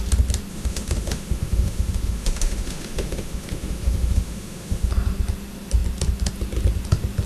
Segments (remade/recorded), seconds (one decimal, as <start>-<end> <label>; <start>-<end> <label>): 0.0-0.5 recorded; 0.5-4.9 remade; 4.9-7.3 recorded